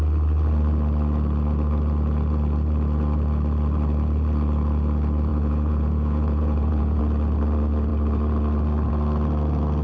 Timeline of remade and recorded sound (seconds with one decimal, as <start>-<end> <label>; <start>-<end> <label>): 0.0-5.3 recorded; 5.3-7.0 remade; 7.0-9.8 recorded